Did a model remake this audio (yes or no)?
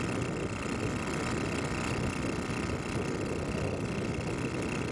no